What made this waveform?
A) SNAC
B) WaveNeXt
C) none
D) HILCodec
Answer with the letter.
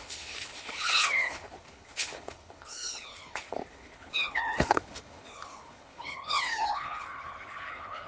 D